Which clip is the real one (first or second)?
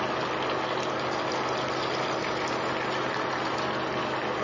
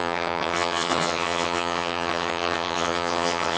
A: first